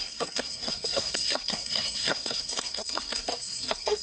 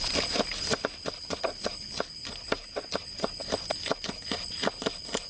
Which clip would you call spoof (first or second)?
first